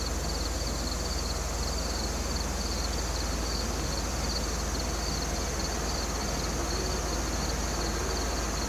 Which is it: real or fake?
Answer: real